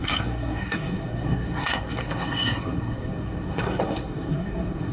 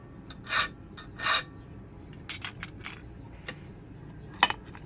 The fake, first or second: first